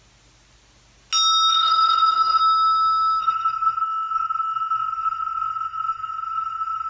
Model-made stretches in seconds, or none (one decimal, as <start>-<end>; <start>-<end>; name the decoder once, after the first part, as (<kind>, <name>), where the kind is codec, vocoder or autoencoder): 1.5-2.4 (codec, SNAC); 3.2-6.9